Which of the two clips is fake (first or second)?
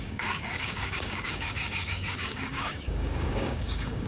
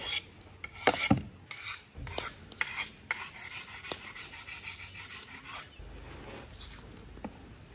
first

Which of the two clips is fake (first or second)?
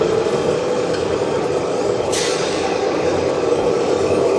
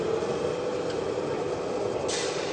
first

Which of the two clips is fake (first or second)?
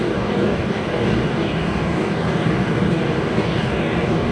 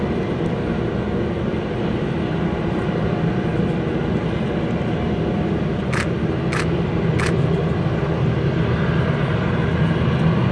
first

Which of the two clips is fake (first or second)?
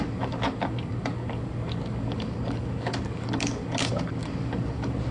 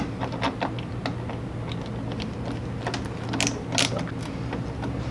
first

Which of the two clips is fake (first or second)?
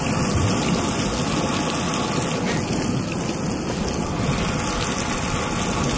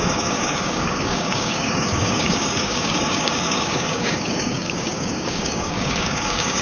second